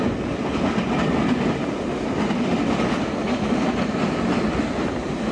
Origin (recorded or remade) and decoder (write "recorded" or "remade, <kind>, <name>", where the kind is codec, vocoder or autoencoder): recorded